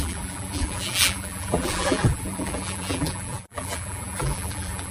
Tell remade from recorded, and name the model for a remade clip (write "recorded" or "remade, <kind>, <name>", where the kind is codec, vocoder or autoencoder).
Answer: remade, vocoder, BigVGAN v2